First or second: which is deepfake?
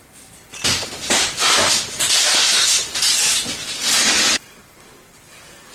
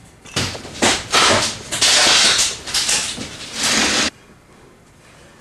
first